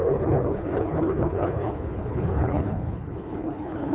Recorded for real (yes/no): no